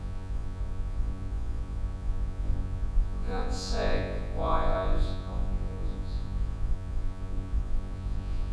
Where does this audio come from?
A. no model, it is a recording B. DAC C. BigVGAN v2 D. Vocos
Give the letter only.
D